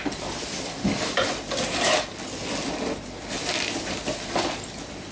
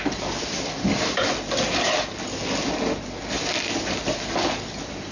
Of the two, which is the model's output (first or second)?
first